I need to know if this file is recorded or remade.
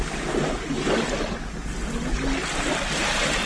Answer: recorded